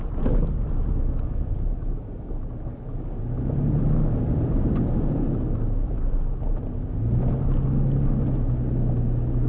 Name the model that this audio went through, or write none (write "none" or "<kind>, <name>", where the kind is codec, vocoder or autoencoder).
none